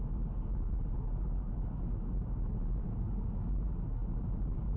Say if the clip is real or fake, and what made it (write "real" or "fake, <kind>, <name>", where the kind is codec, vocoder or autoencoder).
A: real